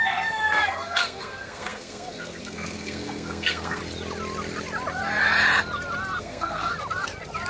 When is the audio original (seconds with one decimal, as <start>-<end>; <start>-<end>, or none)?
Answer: 3.8-6.2; 6.7-7.5